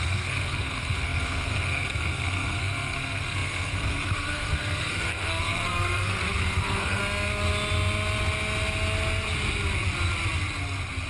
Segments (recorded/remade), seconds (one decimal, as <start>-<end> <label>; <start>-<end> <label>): 0.0-7.0 remade; 7.0-11.1 recorded